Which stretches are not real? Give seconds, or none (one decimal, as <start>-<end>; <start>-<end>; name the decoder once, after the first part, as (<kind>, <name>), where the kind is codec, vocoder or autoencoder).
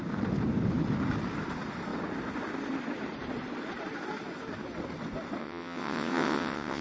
5.4-6.8 (vocoder, WaveNeXt)